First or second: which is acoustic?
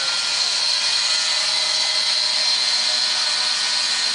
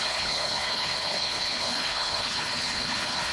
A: first